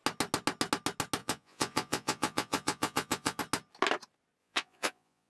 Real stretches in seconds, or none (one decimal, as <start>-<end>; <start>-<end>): 0.0-1.2; 3.4-4.4

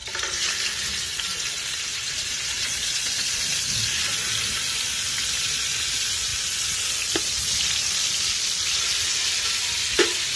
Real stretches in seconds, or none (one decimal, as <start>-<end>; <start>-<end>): 0.0-1.9; 3.4-10.4

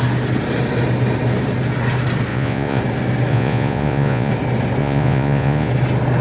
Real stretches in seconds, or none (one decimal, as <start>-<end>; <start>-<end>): 0.0-2.3; 2.8-3.3; 4.3-4.8; 5.7-6.2

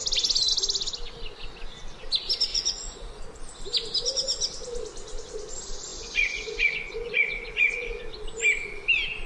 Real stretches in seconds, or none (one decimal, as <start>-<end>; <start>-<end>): 0.0-2.5; 3.2-5.9; 8.0-9.3

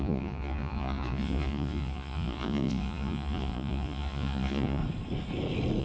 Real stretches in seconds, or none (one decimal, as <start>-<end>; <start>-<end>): 4.8-5.8

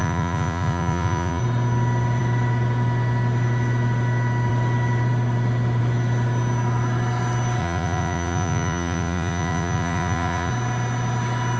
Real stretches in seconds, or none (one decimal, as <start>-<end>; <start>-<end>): 1.4-7.6; 10.5-11.6

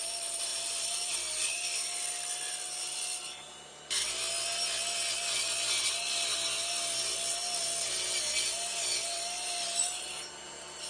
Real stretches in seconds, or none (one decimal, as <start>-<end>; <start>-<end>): 0.0-10.9